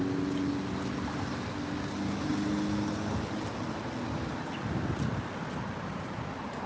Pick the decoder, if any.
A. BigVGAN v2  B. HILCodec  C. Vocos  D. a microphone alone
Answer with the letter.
D